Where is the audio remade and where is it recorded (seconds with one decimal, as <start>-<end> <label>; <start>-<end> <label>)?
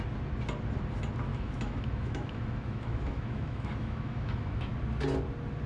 0.0-1.3 recorded; 1.3-4.7 remade; 4.7-5.7 recorded